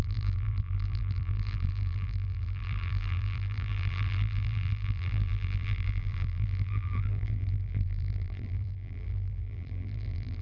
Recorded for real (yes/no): no